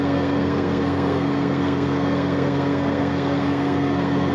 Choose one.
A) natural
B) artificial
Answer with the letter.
B